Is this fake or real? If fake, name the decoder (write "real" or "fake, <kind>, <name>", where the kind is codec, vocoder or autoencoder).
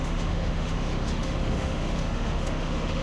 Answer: fake, autoencoder, DAC-VAE